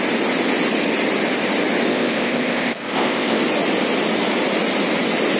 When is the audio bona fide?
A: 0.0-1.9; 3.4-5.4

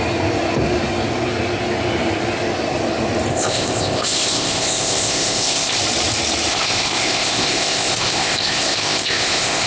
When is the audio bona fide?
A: 0.0-3.3; 5.8-6.5

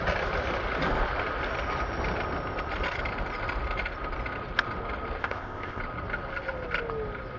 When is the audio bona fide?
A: 0.0-5.2; 5.8-7.4